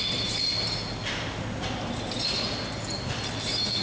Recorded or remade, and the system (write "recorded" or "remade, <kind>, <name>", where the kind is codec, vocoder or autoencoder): recorded